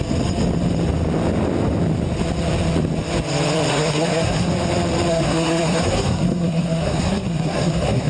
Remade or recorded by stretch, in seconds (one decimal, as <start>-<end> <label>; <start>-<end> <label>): 0.0-3.7 recorded; 3.7-4.5 remade; 4.5-5.1 recorded; 5.1-8.1 remade